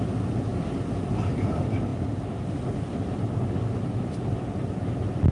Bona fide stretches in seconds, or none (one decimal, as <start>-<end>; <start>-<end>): 0.0-5.3